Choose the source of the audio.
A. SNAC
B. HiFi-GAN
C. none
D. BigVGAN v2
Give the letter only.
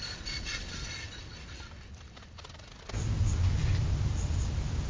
C